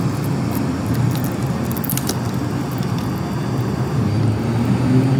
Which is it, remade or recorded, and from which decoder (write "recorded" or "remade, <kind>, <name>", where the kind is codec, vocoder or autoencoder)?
recorded